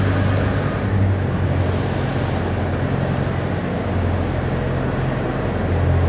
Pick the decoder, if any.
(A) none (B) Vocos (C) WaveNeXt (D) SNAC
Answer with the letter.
A